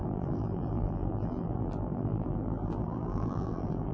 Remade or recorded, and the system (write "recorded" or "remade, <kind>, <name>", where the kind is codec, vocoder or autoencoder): remade, vocoder, BigVGAN v2